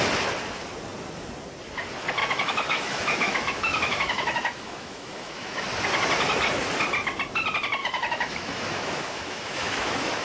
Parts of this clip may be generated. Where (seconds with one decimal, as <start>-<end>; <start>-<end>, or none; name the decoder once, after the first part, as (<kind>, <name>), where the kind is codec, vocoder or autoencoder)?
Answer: 2.2-5.6 (autoencoder, DAC-VAE); 7.8-10.2